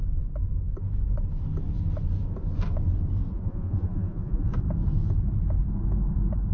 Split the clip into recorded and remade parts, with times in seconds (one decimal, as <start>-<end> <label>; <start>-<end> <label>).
0.0-3.3 recorded; 3.3-4.5 remade; 4.5-6.5 recorded